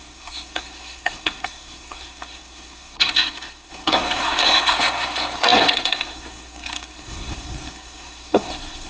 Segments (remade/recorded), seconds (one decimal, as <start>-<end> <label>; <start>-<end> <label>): 0.0-8.9 remade